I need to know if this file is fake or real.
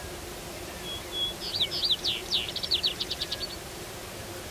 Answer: real